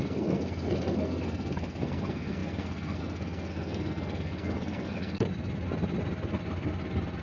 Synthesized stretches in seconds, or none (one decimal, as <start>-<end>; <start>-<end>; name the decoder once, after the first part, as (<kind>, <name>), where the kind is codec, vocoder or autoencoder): 0.0-5.3 (codec, SNAC)